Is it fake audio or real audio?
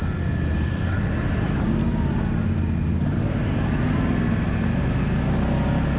real